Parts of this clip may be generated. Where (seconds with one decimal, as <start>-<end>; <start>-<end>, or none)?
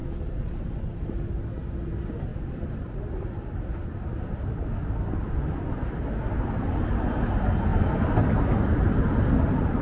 2.3-6.1; 7.7-9.0